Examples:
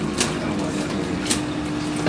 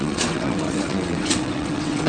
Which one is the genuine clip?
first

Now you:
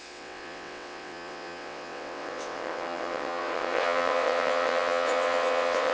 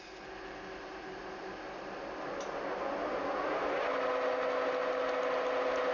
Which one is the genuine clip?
second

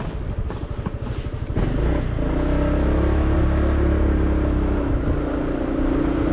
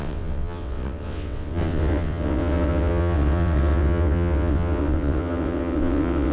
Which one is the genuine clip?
first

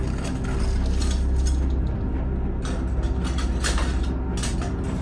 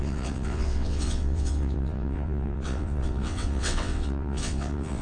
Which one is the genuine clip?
first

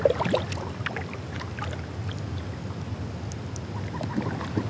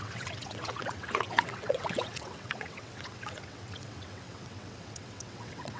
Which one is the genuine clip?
first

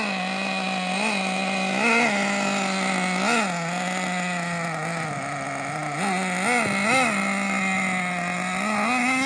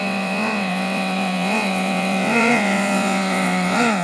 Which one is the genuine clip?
first